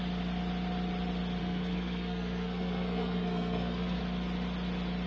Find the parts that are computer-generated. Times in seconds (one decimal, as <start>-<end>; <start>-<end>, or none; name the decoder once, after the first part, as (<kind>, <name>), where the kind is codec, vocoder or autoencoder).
1.4-4.0 (codec, SNAC)